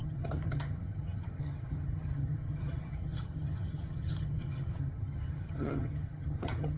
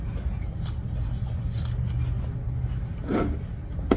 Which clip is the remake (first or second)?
first